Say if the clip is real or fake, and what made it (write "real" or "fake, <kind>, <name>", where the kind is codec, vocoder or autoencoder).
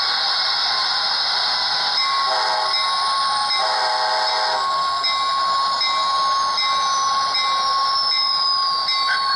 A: real